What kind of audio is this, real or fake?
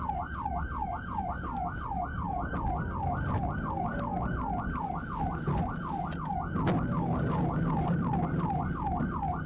real